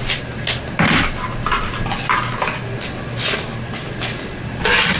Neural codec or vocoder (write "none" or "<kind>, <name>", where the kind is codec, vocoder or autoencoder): none